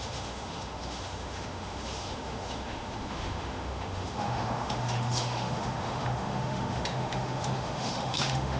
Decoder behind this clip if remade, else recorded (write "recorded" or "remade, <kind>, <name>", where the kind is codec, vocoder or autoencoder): remade, autoencoder, DAC-VAE